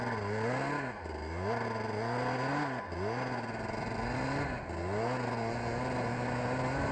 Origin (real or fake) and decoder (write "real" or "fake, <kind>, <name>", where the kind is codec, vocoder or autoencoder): real